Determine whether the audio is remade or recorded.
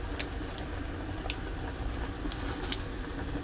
recorded